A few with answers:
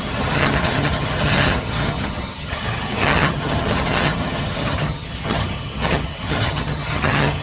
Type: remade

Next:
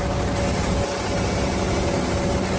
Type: recorded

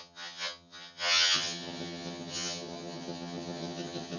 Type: remade